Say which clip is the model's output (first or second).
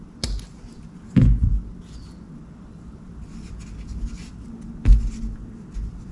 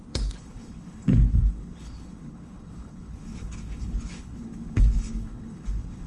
second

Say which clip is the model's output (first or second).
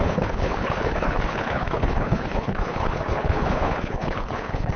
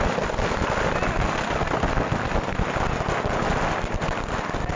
first